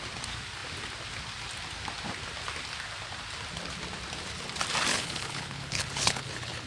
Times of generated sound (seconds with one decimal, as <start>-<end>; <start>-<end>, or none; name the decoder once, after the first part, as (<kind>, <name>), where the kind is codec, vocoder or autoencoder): 4.9-6.7 (codec, HILCodec)